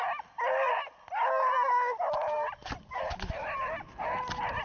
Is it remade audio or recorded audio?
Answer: recorded